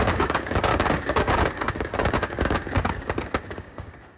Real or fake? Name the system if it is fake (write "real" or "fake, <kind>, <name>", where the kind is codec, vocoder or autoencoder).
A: fake, codec, DAC